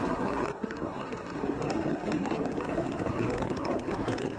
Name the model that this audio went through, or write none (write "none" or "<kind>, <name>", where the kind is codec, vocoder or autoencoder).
codec, SNAC